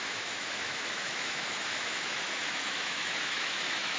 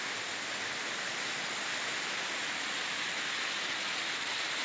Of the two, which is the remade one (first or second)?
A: first